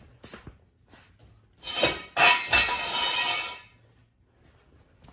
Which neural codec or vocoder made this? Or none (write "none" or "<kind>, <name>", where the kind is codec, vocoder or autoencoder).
none